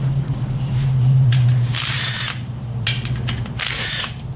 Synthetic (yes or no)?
yes